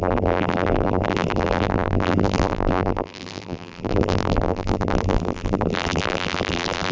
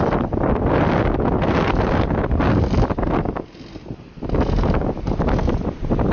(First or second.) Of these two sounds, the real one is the second